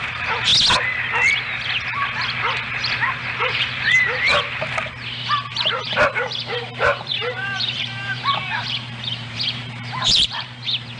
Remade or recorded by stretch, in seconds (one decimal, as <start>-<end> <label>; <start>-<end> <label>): 0.0-0.5 remade; 0.5-3.4 recorded; 3.4-4.3 remade; 4.3-6.1 recorded; 6.1-11.0 remade